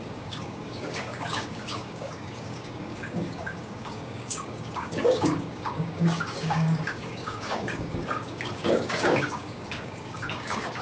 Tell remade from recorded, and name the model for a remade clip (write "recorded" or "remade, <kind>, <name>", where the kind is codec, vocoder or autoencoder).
remade, codec, DAC